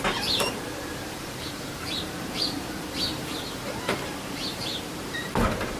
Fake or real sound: fake